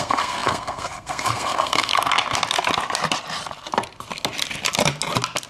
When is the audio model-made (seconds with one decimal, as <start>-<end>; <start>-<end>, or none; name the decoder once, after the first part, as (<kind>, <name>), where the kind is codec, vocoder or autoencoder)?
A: 0.0-1.9 (codec, SNAC)